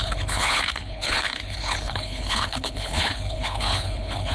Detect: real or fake fake